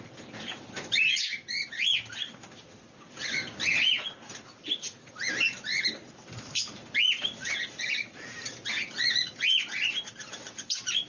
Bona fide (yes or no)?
yes